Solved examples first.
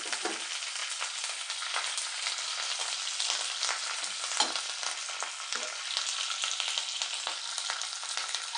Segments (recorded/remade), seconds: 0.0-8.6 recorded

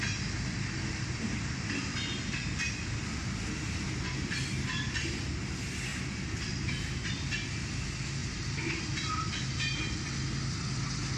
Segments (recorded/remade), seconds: 0.0-8.2 recorded; 8.2-9.8 remade; 9.8-11.2 recorded

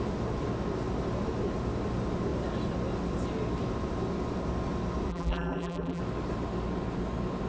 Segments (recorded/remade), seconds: 0.0-5.1 recorded; 5.1-6.0 remade; 6.0-7.5 recorded

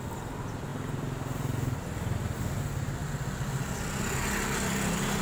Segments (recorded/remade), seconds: 0.0-3.0 recorded; 3.0-4.0 remade; 4.0-5.2 recorded

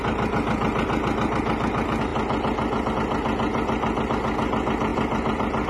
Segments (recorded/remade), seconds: 0.0-3.5 recorded; 3.5-4.1 remade; 4.1-4.9 recorded; 4.9-5.7 remade

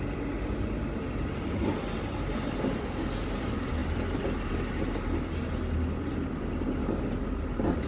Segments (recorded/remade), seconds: 0.0-7.9 recorded